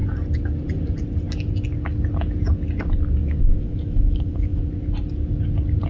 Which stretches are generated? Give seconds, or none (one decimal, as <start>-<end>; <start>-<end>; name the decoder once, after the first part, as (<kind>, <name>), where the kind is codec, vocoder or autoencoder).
3.2-4.6 (autoencoder, DAC-VAE)